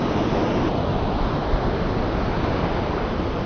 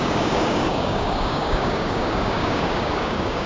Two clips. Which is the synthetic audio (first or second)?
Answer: second